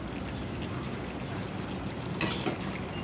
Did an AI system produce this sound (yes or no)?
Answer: no